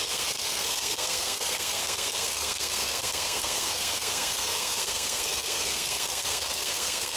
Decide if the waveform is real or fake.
fake